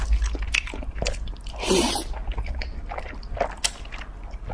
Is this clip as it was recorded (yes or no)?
yes